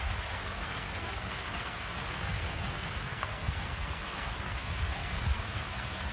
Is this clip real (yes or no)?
no